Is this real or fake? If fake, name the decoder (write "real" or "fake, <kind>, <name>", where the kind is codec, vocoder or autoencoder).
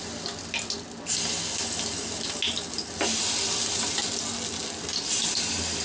real